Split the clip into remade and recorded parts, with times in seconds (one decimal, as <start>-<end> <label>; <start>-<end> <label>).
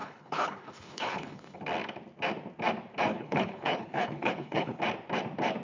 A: 0.0-1.6 remade; 1.6-3.1 recorded; 3.1-4.8 remade; 4.8-5.6 recorded